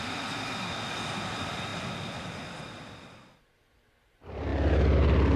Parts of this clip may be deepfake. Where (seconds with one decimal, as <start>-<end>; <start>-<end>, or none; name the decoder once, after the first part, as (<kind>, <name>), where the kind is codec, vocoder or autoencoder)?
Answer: none